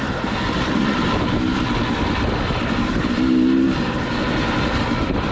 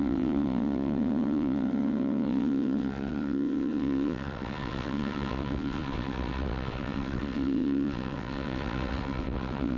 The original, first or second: first